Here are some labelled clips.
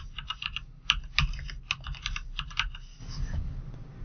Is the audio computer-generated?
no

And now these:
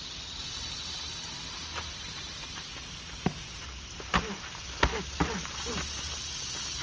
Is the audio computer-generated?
yes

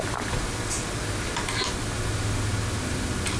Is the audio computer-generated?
no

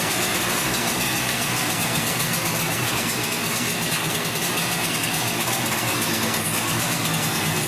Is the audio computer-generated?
yes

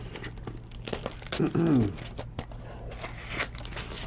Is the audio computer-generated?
no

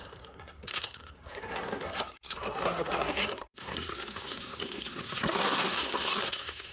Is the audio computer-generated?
yes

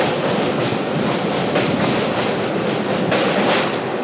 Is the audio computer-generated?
no